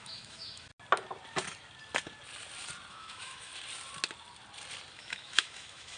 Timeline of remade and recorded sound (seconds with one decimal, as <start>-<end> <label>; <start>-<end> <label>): 0.0-0.7 remade; 0.7-2.9 recorded; 2.9-3.5 remade; 3.5-4.9 recorded; 4.9-6.0 remade